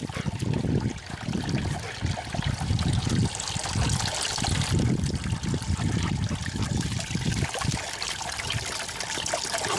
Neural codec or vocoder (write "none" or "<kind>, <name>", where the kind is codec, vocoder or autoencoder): none